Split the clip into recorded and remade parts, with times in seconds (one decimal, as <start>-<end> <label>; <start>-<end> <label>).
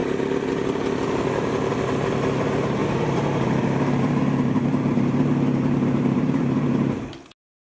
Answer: 0.0-2.8 recorded; 2.8-7.0 remade; 7.0-7.7 recorded